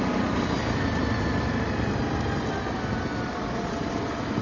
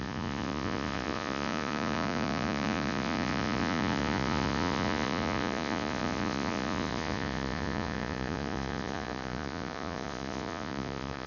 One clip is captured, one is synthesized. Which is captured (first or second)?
first